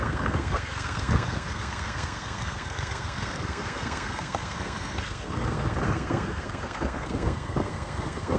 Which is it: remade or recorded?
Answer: remade